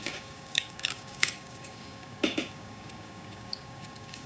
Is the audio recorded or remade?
remade